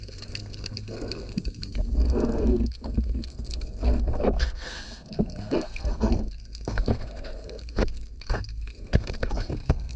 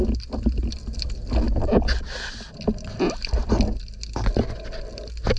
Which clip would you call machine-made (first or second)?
first